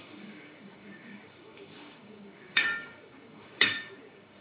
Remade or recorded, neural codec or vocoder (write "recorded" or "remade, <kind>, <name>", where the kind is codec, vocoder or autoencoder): remade, codec, DAC